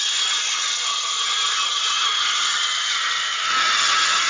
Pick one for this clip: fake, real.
fake